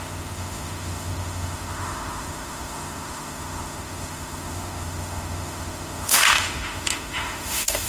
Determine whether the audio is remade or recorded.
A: remade